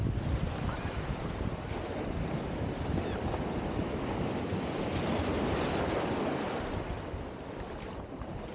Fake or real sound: real